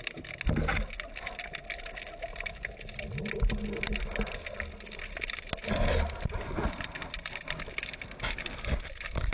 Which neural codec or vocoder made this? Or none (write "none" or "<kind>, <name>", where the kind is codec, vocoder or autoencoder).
none